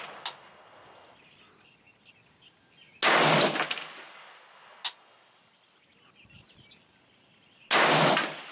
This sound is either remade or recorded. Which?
recorded